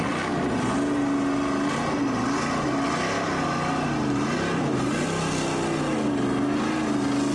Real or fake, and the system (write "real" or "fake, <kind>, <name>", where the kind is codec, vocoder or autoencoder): real